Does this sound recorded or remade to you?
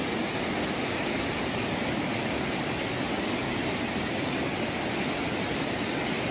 recorded